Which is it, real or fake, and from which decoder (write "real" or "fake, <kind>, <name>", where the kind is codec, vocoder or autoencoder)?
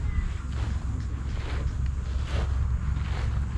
real